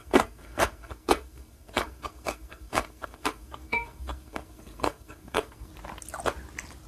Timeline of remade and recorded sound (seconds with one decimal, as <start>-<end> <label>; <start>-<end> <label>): 0.0-5.7 remade; 5.7-6.9 recorded